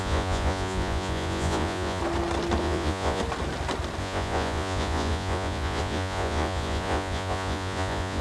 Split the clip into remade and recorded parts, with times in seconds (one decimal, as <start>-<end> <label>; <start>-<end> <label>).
0.0-2.0 remade; 2.0-2.6 recorded; 2.6-3.2 remade; 3.2-4.0 recorded; 4.0-8.2 remade